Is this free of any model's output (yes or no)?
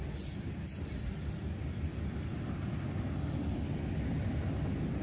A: yes